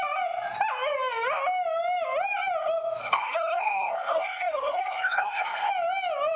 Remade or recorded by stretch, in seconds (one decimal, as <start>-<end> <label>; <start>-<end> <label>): 0.0-3.0 recorded; 3.0-5.7 remade; 5.7-6.4 recorded